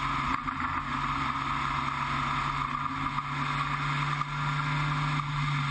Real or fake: real